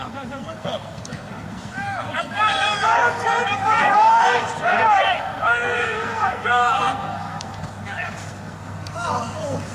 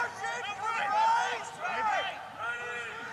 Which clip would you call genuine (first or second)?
second